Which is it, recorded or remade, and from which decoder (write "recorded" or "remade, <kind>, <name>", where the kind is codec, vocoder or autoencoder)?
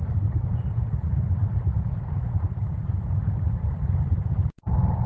recorded